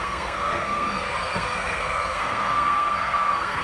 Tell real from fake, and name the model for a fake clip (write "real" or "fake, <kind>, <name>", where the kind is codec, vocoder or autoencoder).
fake, codec, SNAC